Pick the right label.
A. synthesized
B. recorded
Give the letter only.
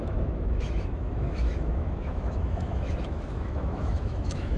A